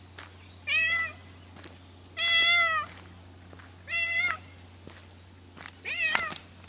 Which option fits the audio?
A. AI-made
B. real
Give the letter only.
B